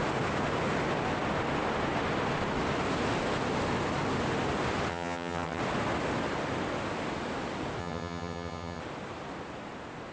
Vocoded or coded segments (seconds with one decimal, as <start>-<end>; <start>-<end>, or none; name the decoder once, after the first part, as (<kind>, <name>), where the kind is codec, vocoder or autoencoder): 4.9-5.6 (vocoder, HiFi-GAN); 7.8-8.8